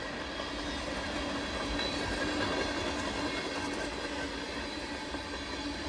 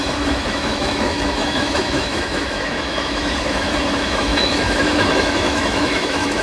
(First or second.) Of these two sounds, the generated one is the second